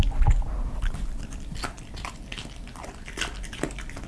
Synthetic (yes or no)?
no